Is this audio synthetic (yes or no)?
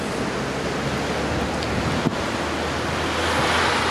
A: no